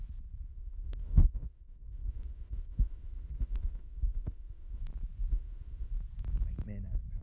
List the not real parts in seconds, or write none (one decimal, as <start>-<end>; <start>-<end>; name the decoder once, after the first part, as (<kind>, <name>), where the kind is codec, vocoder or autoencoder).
0.5-4.8 (autoencoder, DAC-VAE); 5.3-5.9